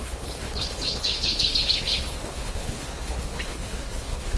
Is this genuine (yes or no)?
no